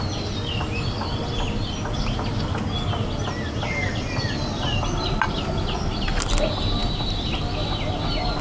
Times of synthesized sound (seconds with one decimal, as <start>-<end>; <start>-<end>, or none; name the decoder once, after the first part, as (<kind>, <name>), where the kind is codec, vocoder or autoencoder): none